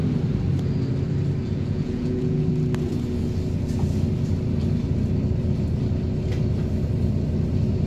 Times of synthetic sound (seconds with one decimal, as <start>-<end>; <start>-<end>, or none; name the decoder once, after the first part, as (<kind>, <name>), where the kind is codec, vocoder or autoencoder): 1.4-2.5 (vocoder, Vocos)